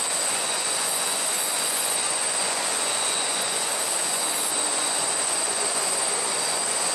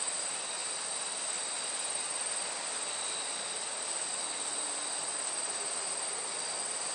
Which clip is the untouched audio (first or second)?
second